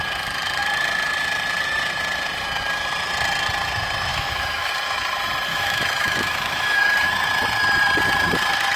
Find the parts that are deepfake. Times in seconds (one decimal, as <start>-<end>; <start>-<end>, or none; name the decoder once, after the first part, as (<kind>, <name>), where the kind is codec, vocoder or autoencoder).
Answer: 4.1-4.7 (autoencoder, DAC-VAE); 5.5-7.1